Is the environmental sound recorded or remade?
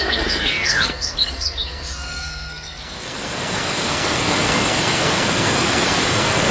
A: remade